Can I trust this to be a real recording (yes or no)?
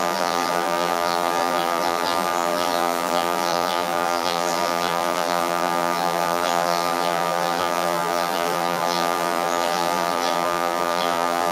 no